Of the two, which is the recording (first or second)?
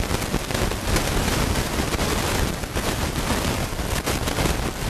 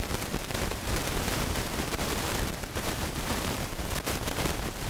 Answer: first